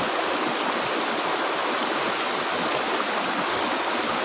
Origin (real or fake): real